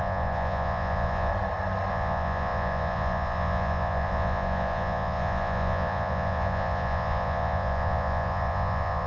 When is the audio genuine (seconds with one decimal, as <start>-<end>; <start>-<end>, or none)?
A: 1.3-1.9